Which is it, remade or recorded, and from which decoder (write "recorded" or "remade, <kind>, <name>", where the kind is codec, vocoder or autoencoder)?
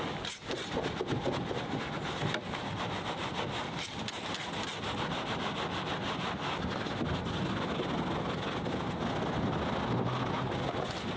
recorded